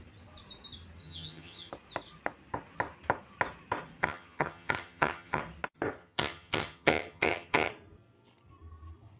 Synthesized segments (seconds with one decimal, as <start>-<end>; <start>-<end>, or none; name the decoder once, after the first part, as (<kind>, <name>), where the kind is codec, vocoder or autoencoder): 1.0-1.7 (vocoder, HiFi-GAN); 4.0-5.4; 6.0-7.7